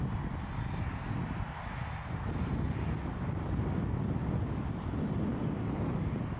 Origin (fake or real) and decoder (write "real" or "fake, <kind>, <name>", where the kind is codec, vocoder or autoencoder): real